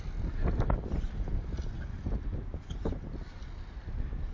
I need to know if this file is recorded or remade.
recorded